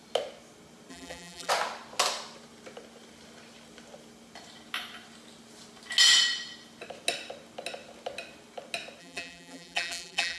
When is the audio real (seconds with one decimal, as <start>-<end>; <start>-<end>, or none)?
0.0-0.9; 1.5-9.0